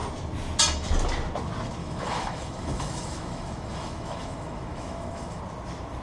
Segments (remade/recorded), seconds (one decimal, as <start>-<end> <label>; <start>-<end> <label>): 0.0-1.8 recorded; 1.8-5.4 remade; 5.4-6.0 recorded